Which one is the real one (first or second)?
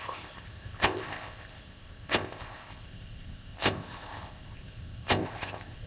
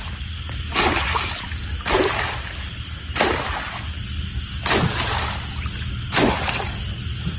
second